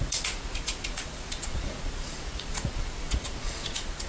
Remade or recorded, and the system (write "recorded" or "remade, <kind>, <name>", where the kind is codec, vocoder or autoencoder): remade, vocoder, Vocos